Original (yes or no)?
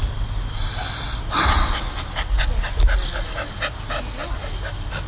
yes